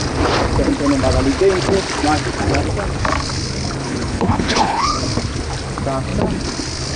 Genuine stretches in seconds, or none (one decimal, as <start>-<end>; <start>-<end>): 0.0-3.8; 5.0-7.0